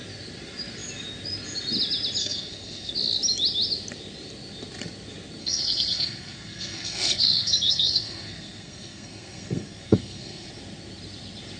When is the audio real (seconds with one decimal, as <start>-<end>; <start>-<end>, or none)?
0.0-2.2; 2.9-5.4; 10.5-11.6